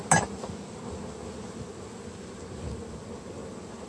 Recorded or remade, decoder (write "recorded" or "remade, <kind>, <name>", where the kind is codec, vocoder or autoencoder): recorded